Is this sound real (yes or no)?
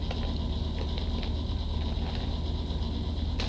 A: yes